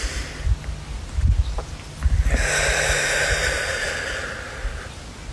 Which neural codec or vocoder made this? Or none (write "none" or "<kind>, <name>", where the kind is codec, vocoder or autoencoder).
none